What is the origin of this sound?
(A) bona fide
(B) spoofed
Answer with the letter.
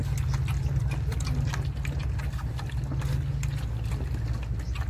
A